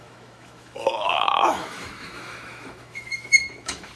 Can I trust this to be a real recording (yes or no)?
no